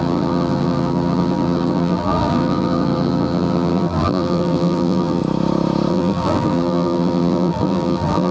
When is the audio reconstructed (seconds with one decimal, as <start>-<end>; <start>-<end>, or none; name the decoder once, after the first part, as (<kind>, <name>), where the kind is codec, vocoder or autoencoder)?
0.0-5.2 (vocoder, BigVGAN v2); 5.9-8.3